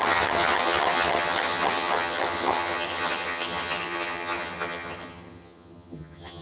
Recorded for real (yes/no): no